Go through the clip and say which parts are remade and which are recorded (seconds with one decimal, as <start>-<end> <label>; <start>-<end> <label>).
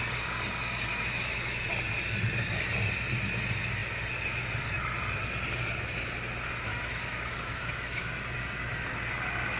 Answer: 0.0-0.9 recorded; 0.9-1.7 remade; 1.7-6.7 recorded; 6.7-8.1 remade; 8.1-9.6 recorded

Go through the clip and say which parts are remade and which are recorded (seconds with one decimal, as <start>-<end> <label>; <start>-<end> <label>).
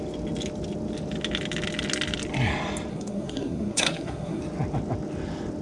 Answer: 0.0-2.9 recorded; 2.9-4.4 remade; 4.4-5.6 recorded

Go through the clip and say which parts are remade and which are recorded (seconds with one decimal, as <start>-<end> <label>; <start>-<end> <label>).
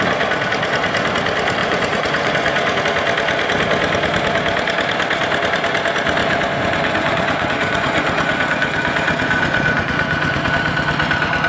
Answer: 0.0-1.6 recorded; 1.6-2.8 remade; 2.8-6.2 recorded; 6.2-10.5 remade; 10.5-11.5 recorded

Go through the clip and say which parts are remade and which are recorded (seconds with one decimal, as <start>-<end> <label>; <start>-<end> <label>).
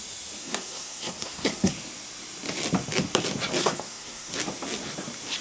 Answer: 0.0-0.4 recorded; 0.4-1.7 remade; 1.7-3.6 recorded; 3.6-4.3 remade; 4.3-5.4 recorded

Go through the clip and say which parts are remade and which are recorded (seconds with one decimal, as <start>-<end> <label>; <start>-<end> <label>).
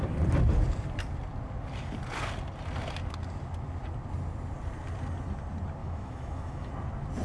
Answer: 0.0-5.8 recorded; 5.8-6.7 remade; 6.7-7.2 recorded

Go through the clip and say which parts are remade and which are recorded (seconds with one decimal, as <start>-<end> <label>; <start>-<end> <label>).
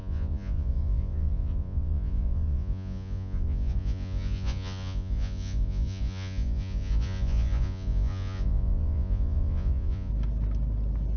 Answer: 0.0-10.1 remade; 10.1-11.2 recorded